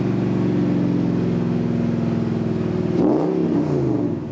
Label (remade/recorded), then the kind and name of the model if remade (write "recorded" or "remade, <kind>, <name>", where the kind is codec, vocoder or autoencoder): recorded